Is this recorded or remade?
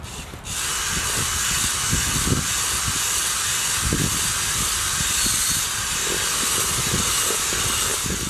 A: recorded